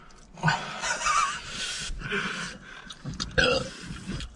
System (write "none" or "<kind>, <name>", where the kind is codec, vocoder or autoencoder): none